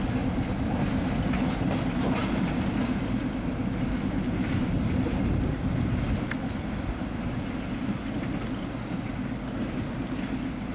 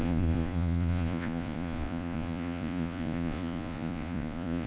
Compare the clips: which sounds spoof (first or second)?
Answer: second